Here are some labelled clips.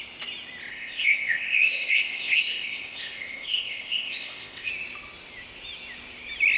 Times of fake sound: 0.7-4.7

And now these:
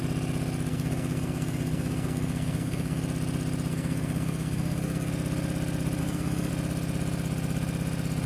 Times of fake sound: 0.7-3.0; 3.7-5.1; 6.0-6.5

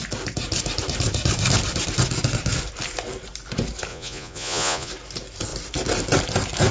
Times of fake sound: 3.9-4.9